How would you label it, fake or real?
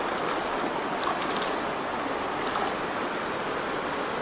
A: real